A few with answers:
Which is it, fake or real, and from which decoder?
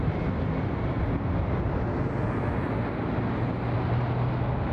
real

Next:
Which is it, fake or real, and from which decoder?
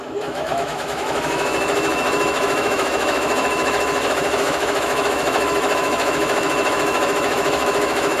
fake, autoencoder, DAC-VAE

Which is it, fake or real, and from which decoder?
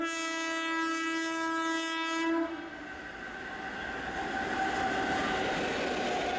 real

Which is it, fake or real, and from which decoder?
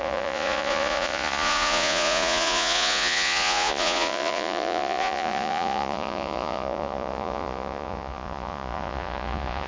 fake, vocoder, Vocos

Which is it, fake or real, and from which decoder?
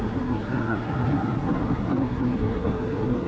fake, codec, SNAC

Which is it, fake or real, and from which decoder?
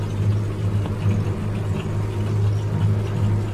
real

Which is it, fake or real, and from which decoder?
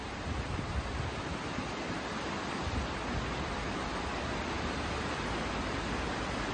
real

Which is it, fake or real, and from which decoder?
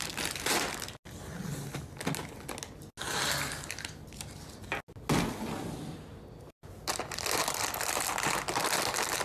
real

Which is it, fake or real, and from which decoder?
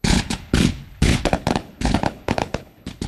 fake, codec, HILCodec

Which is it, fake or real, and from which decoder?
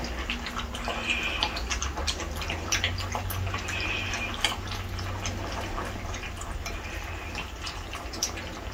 real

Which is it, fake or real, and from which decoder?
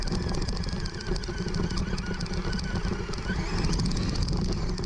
real